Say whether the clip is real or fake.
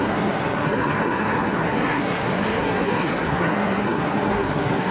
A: fake